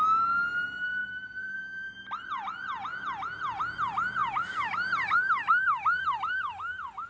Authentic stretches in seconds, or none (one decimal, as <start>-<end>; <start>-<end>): 0.0-1.0; 2.3-4.2; 6.3-7.1